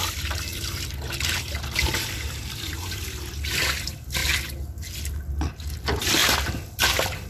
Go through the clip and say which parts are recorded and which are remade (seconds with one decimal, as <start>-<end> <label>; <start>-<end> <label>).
0.0-4.2 remade; 4.2-5.8 recorded; 5.8-6.2 remade; 6.2-6.8 recorded; 6.8-7.3 remade